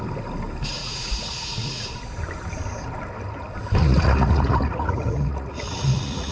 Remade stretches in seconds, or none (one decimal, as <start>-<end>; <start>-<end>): 0.8-1.8; 3.8-6.3